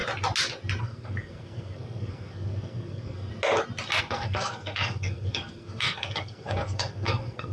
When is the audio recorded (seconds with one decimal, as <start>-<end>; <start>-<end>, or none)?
0.0-0.8; 3.3-4.0